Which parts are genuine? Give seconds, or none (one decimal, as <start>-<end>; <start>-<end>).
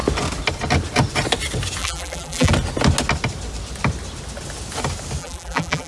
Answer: 0.0-1.8; 2.5-5.2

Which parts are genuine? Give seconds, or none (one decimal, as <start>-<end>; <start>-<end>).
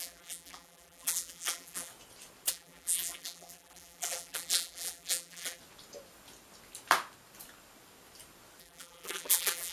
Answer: 1.9-2.5; 5.6-8.6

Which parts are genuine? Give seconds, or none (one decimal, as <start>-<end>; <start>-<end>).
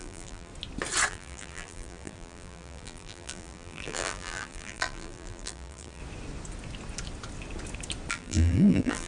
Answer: 0.5-1.1; 6.0-8.1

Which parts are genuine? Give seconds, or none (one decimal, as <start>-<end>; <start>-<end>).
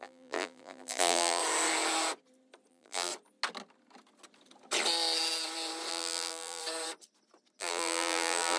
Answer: 1.4-2.7; 3.1-5.9; 6.6-7.6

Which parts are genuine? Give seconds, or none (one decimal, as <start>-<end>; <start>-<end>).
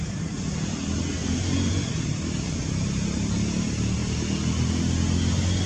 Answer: 0.0-1.2; 1.7-5.7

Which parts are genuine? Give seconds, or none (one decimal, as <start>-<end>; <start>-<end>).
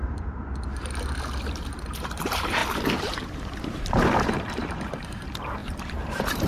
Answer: 0.5-1.5; 2.6-3.3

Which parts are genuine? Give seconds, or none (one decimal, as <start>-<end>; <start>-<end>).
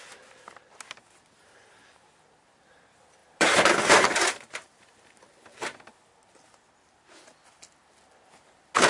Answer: 0.0-3.2; 5.9-8.9